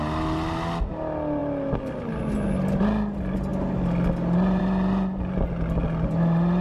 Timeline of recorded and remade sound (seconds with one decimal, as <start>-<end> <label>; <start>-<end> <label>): 0.0-6.6 recorded